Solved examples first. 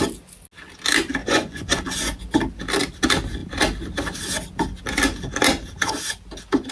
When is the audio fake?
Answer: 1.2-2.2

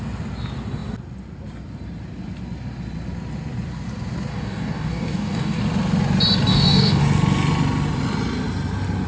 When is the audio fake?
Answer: 4.3-5.6; 6.5-7.0

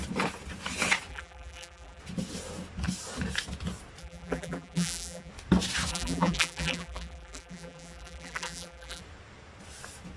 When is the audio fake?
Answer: 1.1-2.0; 4.0-5.3; 5.9-9.0

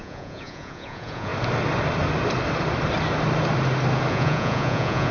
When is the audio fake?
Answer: 0.0-1.3; 4.1-5.1

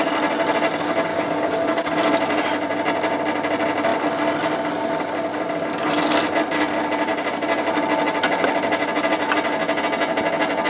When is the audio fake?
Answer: 1.1-1.9

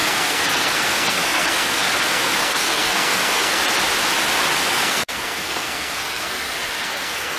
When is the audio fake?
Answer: 0.0-3.6; 4.6-7.4

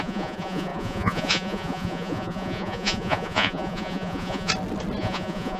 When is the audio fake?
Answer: 0.0-4.5; 5.0-5.6